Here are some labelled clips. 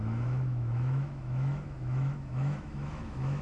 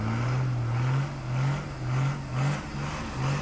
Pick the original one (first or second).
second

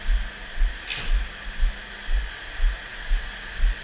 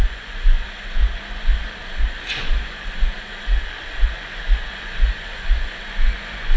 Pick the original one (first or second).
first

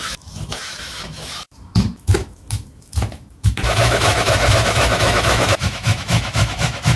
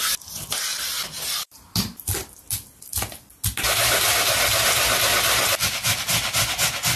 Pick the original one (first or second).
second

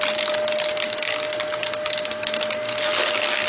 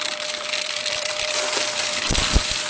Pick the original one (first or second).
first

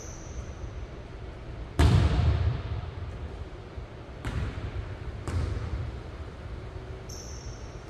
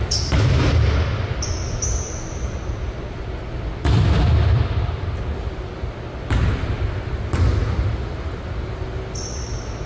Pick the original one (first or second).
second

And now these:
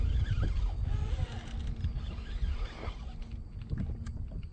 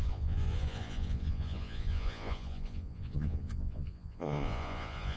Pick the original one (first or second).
first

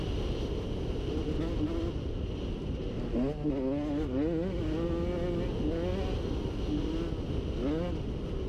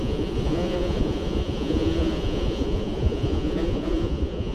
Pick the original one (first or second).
first